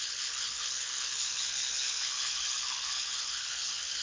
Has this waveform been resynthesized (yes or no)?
yes